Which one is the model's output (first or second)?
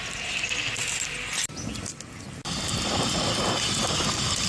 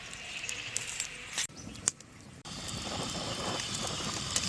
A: second